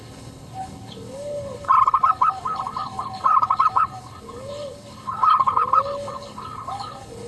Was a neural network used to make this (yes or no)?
yes